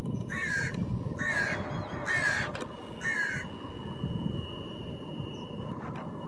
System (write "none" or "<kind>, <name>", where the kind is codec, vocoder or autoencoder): none